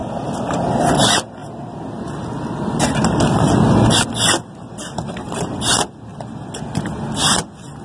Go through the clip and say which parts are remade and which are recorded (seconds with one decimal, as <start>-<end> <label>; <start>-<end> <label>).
0.0-7.8 recorded